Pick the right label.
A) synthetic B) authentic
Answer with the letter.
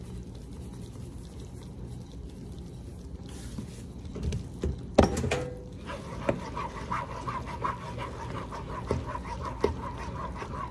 B